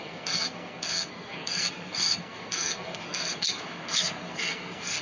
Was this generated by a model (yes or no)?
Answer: yes